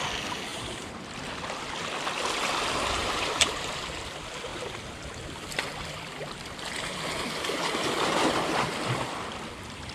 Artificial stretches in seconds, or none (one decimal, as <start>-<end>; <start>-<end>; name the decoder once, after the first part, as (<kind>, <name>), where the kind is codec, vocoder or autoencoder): 0.5-1.0 (vocoder, BigVGAN v2); 3.0-4.0